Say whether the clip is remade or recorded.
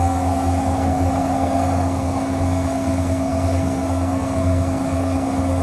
remade